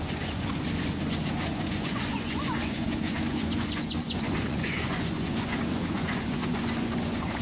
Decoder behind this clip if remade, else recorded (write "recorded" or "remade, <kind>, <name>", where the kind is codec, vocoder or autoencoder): remade, vocoder, Vocos